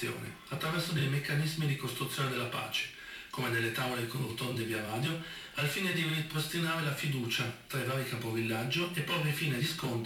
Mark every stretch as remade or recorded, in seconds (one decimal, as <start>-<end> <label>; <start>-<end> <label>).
0.0-1.0 remade; 1.0-4.3 recorded; 4.3-6.1 remade; 6.1-9.6 recorded; 9.6-10.1 remade